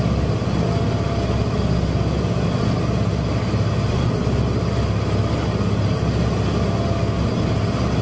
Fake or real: real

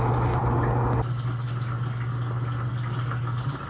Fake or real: real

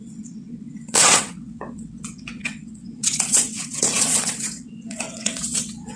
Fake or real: fake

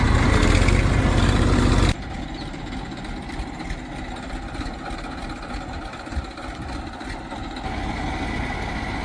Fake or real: real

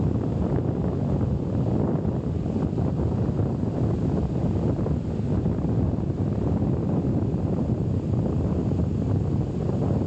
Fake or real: real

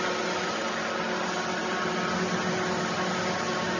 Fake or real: real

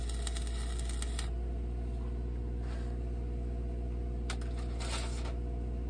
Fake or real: real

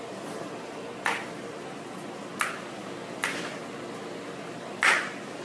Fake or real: real